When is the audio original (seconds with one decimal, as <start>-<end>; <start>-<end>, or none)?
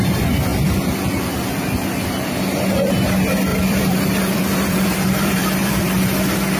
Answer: 0.0-3.5; 5.8-6.6